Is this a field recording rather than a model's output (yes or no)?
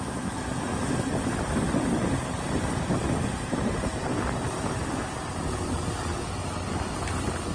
yes